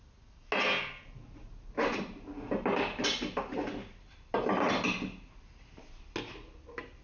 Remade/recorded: recorded